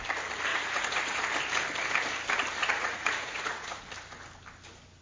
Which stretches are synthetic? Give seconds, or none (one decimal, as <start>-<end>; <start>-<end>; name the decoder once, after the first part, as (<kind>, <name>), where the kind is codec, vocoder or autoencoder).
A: 0.5-1.2 (vocoder, Vocos); 2.6-3.8